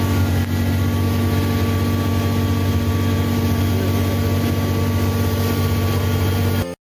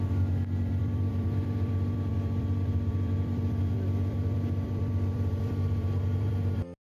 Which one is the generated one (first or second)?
second